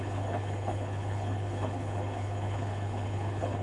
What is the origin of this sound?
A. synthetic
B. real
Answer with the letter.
A